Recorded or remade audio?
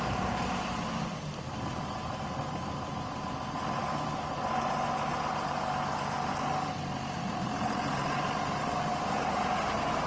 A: recorded